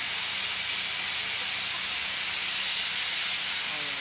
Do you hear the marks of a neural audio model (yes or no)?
no